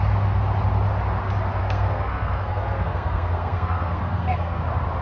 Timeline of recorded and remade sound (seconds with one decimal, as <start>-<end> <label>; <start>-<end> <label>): 0.0-1.6 recorded; 1.6-4.6 remade; 4.6-5.0 recorded